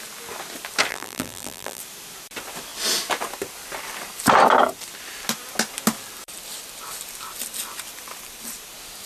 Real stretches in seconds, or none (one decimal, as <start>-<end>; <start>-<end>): 0.0-0.9; 1.8-9.1

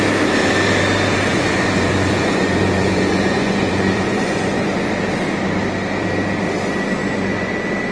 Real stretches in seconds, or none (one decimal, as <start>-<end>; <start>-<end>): 0.0-1.3; 4.9-7.0; 7.5-7.9

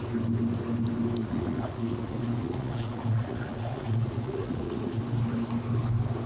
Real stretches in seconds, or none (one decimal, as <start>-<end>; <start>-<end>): 0.0-1.2; 5.0-6.3

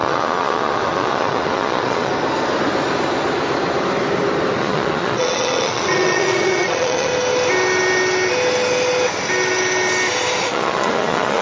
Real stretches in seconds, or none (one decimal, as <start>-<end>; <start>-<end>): 2.1-4.6; 7.1-10.4

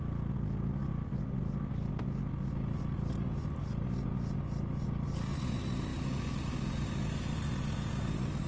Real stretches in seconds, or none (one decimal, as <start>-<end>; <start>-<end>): 0.0-8.5

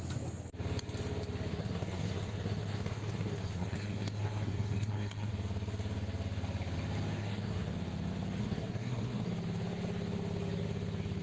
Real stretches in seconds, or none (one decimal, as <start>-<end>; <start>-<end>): 0.0-1.5; 5.3-7.2; 7.7-8.4; 9.3-11.2

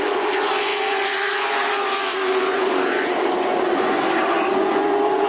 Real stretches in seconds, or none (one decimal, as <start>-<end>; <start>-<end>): none

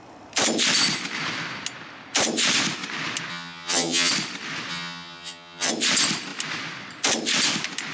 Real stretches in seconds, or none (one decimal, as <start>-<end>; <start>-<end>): 0.0-3.3; 4.1-4.7; 5.7-7.9